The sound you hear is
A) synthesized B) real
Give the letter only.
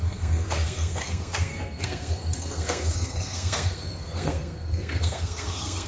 A